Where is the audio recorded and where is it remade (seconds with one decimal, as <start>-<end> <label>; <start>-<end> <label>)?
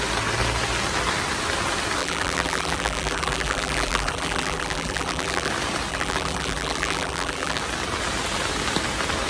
0.0-2.0 recorded; 2.0-5.5 remade; 5.5-5.9 recorded; 5.9-7.6 remade; 7.6-9.3 recorded